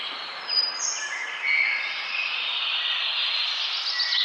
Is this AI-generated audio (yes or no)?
no